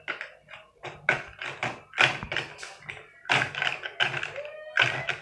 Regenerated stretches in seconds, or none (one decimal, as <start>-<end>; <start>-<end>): none